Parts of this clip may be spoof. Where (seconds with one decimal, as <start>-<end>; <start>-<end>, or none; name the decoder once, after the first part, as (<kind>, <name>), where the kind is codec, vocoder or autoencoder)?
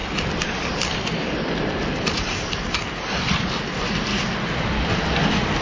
0.0-5.6 (vocoder, BigVGAN v2)